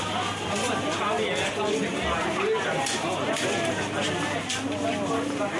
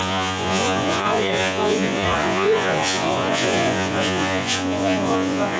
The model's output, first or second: second